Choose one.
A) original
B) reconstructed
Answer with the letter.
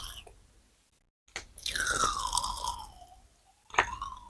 A